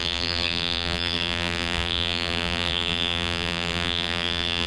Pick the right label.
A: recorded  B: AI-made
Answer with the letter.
B